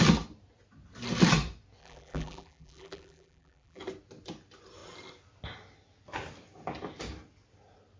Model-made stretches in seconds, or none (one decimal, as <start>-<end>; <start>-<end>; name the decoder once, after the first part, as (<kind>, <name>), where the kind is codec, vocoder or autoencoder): 1.8-3.8 (vocoder, BigVGAN v2)